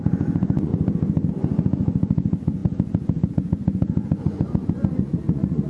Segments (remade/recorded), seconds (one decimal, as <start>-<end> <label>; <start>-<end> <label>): 0.0-0.7 remade; 0.7-1.3 recorded; 1.3-5.7 remade